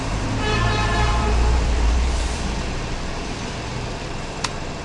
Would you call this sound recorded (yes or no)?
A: no